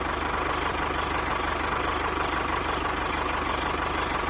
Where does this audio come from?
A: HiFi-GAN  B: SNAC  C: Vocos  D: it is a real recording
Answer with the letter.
D